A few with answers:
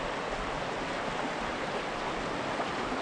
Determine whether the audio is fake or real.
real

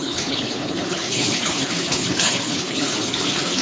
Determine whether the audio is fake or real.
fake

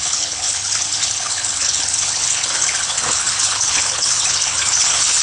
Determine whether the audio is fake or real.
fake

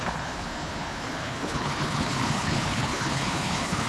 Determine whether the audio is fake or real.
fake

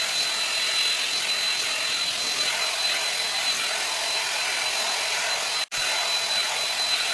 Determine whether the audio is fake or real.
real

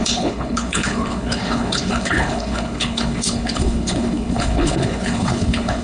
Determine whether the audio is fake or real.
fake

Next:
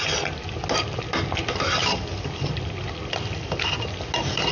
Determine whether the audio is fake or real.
real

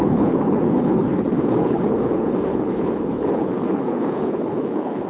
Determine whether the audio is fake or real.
fake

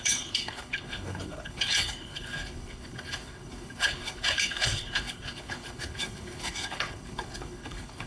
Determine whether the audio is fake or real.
fake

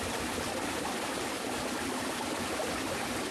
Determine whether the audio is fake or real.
real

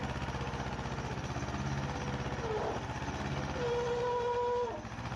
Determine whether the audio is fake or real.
real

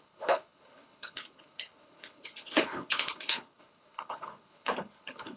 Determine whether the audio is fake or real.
fake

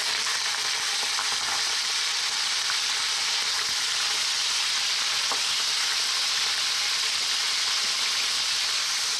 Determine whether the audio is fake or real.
real